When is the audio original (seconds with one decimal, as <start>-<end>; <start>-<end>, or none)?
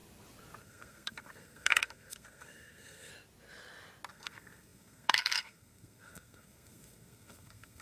0.0-0.6; 3.1-4.1